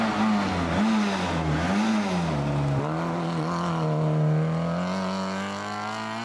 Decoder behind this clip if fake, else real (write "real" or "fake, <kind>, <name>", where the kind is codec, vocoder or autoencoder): real